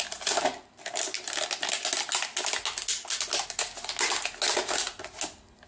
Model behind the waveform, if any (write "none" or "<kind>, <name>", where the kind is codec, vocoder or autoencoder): none